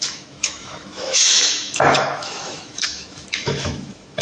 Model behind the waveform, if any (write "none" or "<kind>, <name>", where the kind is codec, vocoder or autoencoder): autoencoder, DAC-VAE